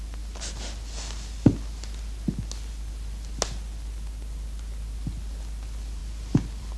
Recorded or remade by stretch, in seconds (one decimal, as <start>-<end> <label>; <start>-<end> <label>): 0.0-6.0 recorded; 6.0-6.8 remade